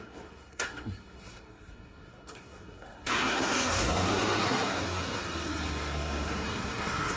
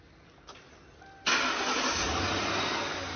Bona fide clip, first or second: second